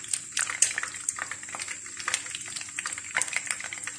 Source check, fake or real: real